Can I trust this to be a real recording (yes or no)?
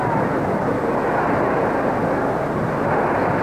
yes